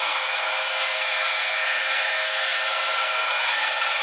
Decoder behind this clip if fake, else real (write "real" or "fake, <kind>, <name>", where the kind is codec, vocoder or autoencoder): fake, codec, SNAC